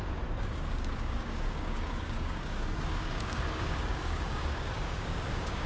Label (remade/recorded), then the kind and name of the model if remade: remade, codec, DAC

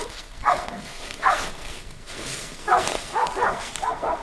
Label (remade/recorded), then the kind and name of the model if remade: remade, codec, SNAC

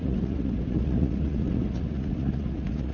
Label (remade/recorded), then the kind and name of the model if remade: remade, vocoder, Vocos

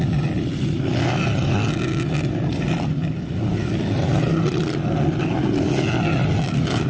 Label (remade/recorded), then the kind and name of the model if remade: recorded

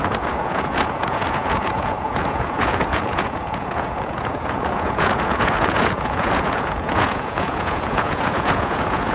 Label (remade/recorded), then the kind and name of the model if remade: remade, vocoder, Vocos